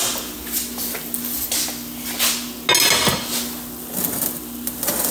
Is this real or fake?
real